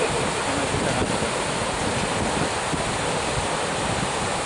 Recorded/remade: remade